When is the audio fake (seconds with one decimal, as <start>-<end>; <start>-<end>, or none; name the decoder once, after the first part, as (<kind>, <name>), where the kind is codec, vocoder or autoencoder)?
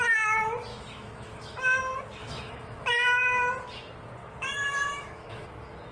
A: 0.7-1.8 (autoencoder, DAC-VAE); 2.2-2.9; 4.2-5.9